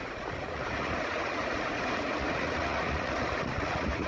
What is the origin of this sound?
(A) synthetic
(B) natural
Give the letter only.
A